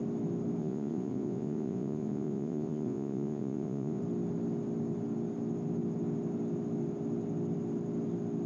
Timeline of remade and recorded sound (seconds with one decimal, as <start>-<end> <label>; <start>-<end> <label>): 0.0-0.6 recorded; 0.6-4.0 remade; 4.0-8.5 recorded